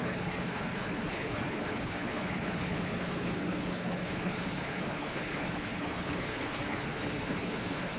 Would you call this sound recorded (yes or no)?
no